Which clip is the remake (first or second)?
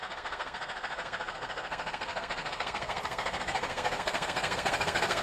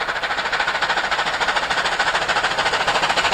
first